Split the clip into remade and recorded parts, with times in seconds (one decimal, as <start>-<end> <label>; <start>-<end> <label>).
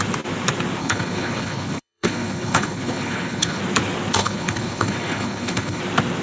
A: 0.0-0.8 recorded; 0.8-3.6 remade; 3.6-4.2 recorded; 4.2-5.8 remade; 5.8-6.2 recorded